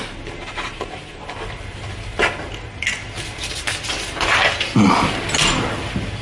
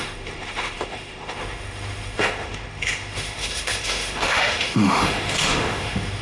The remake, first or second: second